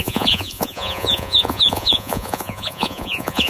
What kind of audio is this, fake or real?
fake